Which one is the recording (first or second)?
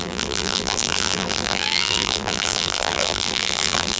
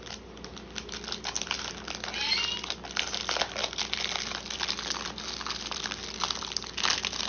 second